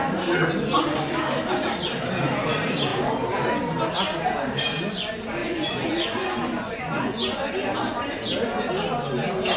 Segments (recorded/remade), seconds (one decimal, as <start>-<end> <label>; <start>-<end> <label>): 0.0-5.4 recorded; 5.4-7.4 remade; 7.4-9.6 recorded